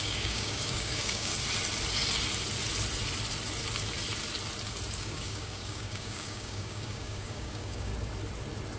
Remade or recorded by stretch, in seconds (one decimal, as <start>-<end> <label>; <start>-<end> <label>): 0.0-1.3 remade; 1.3-5.0 recorded; 5.0-7.9 remade; 7.9-8.8 recorded